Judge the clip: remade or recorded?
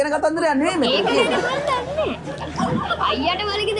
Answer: recorded